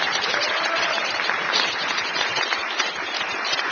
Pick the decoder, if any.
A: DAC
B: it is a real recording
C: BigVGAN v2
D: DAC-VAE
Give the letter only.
C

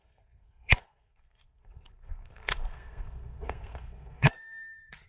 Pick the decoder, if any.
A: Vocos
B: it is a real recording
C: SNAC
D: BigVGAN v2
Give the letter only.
C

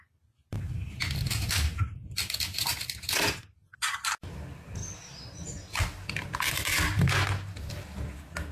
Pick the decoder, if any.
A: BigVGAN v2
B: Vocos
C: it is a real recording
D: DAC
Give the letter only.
C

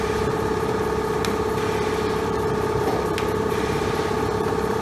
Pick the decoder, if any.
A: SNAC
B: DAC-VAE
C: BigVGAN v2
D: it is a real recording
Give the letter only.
C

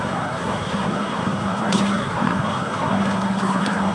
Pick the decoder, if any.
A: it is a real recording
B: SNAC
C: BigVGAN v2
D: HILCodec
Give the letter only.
B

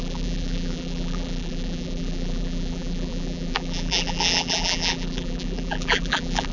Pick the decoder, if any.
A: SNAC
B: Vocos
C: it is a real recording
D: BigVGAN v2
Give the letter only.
D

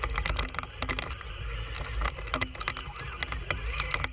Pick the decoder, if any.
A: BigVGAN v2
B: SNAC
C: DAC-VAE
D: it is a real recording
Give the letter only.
D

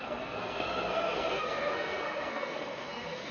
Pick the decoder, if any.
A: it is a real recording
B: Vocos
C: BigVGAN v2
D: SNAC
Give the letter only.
D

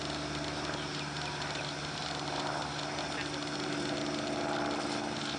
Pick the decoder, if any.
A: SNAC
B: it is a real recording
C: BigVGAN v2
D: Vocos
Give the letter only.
B